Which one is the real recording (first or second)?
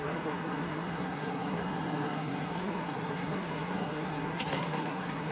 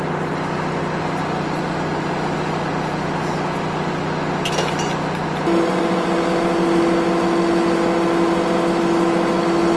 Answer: second